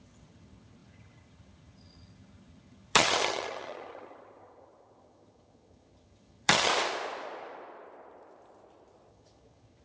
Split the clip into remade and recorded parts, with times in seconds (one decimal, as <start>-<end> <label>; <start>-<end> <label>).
0.0-6.7 remade; 6.7-9.1 recorded; 9.1-9.8 remade